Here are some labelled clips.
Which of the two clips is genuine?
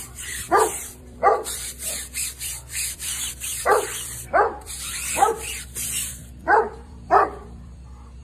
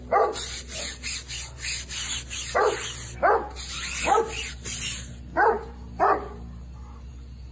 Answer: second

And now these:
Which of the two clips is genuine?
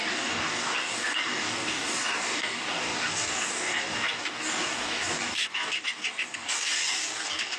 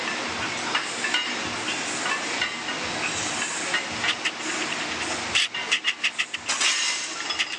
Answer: second